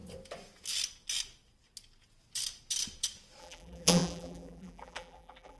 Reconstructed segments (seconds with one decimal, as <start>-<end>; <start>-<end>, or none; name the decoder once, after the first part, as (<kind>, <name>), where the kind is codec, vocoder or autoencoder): 3.4-5.6 (vocoder, BigVGAN v2)